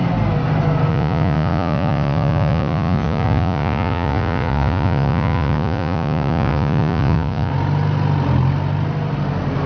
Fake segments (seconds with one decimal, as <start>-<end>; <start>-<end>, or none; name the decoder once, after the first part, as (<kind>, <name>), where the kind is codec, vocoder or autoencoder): 0.9-7.5 (vocoder, Vocos)